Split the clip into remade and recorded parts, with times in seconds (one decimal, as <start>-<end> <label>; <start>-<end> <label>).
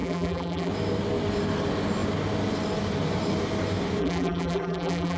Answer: 0.0-0.7 remade; 0.7-4.0 recorded; 4.0-5.2 remade